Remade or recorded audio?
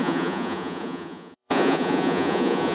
remade